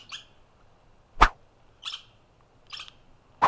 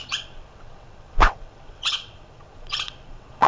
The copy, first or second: second